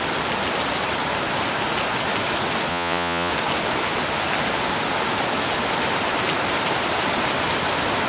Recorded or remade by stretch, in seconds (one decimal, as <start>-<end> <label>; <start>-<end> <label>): 0.0-2.7 recorded; 2.7-3.3 remade; 3.3-8.1 recorded